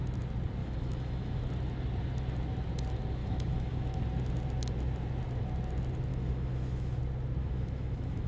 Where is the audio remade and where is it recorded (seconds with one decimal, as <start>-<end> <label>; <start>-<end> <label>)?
0.0-0.6 recorded; 0.6-1.4 remade; 1.4-3.2 recorded; 3.2-4.0 remade; 4.0-6.1 recorded; 6.1-7.0 remade; 7.0-7.4 recorded; 7.4-8.3 remade